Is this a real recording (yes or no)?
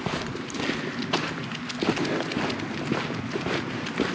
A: yes